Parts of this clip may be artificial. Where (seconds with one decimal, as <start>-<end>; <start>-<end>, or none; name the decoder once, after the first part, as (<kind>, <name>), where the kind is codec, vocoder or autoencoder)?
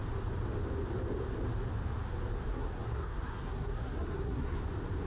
2.5-4.6 (codec, SNAC)